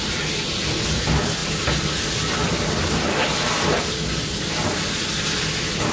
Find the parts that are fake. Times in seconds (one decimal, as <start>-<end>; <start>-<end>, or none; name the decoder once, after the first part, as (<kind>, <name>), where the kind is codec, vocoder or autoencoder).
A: none